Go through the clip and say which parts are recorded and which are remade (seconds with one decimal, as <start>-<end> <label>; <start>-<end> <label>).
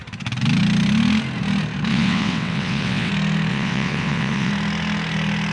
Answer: 0.0-1.9 recorded; 1.9-3.1 remade; 3.1-3.5 recorded; 3.5-4.5 remade; 4.5-5.5 recorded